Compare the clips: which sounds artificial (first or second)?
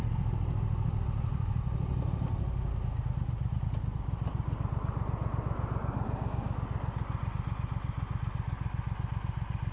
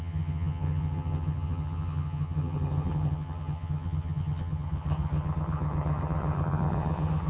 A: second